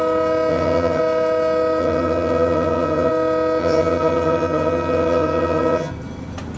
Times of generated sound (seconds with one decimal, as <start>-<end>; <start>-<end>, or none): 0.5-1.0; 1.8-3.1; 3.6-5.9